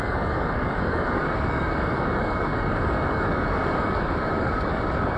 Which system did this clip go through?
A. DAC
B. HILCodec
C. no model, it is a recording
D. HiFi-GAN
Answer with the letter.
A